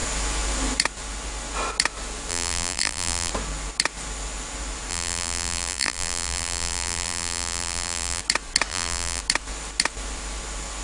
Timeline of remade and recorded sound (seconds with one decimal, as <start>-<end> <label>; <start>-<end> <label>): 0.0-2.3 recorded; 2.3-3.3 remade; 3.3-4.9 recorded; 4.9-8.2 remade; 8.2-8.7 recorded; 8.7-9.2 remade; 9.2-10.8 recorded